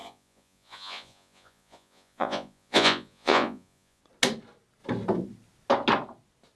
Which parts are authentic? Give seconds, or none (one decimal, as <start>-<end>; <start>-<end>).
4.0-6.6